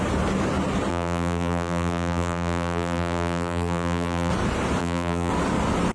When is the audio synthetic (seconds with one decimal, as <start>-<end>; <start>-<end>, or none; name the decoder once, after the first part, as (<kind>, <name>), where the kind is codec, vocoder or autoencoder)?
0.9-4.3 (vocoder, BigVGAN v2); 4.8-5.3